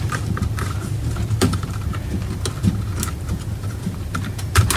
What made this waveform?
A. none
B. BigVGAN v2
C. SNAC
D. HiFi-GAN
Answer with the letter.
B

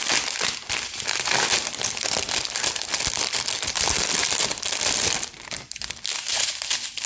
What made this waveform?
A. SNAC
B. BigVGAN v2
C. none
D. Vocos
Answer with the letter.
B